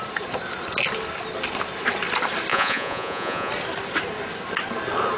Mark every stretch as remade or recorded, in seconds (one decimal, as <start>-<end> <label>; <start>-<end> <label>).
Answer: 0.0-2.5 recorded; 2.5-3.5 remade; 3.5-5.2 recorded